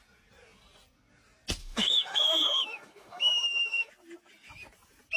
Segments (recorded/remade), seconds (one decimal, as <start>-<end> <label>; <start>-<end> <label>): 0.0-1.6 recorded; 1.6-3.9 remade; 3.9-5.2 recorded